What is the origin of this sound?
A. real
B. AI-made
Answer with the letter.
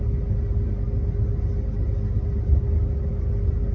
A